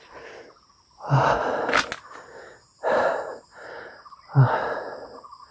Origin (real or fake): real